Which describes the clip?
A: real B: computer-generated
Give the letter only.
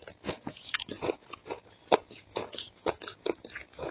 B